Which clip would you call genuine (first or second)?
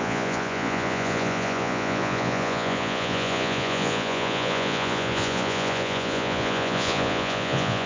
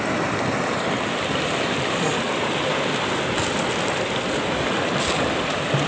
second